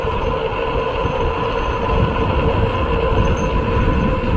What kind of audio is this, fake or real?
real